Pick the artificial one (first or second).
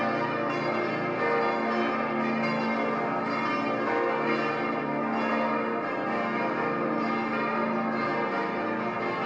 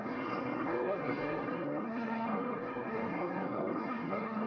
second